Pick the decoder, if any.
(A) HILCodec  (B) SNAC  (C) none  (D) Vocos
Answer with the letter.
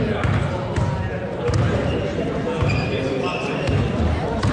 C